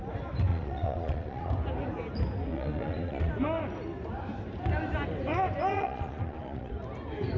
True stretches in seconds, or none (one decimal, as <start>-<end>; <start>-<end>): 0.0-0.5; 1.5-2.5; 3.3-5.7; 6.7-7.4